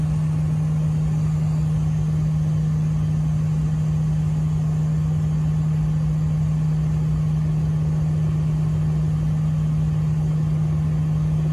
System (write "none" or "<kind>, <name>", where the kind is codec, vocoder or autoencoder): none